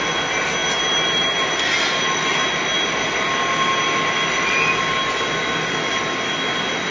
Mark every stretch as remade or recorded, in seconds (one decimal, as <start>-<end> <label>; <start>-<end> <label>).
0.0-6.9 recorded